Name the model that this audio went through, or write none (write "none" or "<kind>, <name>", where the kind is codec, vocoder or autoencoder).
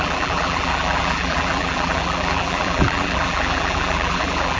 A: vocoder, BigVGAN v2